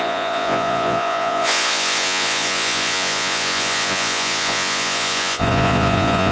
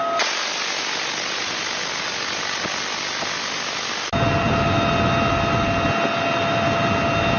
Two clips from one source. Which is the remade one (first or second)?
first